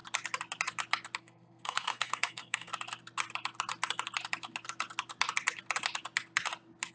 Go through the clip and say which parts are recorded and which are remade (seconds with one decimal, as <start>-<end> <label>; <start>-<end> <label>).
0.0-1.2 recorded; 1.2-2.7 remade; 2.7-6.9 recorded